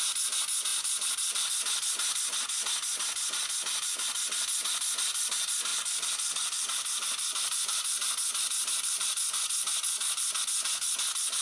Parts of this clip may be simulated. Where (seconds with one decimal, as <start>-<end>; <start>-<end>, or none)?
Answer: 0.7-1.5; 5.7-10.4